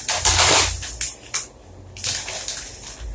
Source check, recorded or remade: recorded